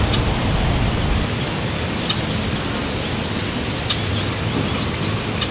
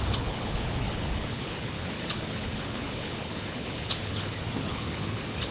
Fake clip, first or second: second